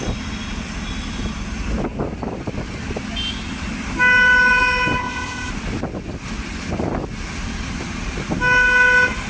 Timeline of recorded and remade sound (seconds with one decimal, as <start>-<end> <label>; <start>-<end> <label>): 0.0-5.0 recorded; 5.0-5.5 remade; 5.5-9.3 recorded